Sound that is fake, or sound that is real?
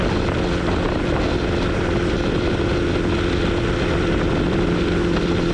real